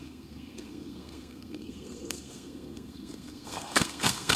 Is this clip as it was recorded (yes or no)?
no